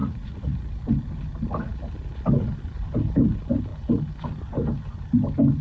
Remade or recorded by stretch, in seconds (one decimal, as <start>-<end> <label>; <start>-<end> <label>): 0.0-0.6 remade; 0.6-5.6 recorded